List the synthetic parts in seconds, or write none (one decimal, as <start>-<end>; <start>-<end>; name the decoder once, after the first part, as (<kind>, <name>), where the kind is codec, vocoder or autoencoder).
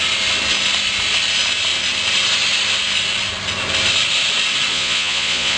4.7-5.6 (vocoder, Vocos)